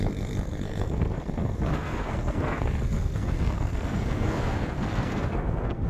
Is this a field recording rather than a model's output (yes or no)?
no